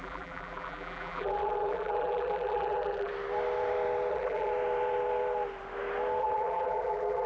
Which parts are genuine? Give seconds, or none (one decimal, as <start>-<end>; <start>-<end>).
3.1-4.1; 4.5-6.2